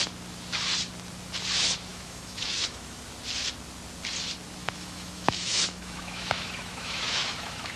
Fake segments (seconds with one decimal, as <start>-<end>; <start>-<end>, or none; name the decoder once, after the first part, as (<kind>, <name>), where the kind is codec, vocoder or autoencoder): 1.9-3.0 (autoencoder, DAC-VAE); 4.6-7.8